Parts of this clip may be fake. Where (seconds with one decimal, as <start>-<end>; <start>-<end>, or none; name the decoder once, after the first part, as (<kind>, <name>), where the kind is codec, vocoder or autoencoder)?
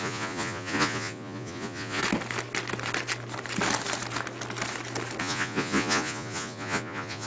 0.0-2.0 (vocoder, Vocos); 5.2-7.3